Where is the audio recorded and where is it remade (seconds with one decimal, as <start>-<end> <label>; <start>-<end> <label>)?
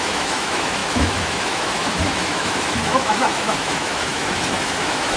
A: 0.0-5.2 remade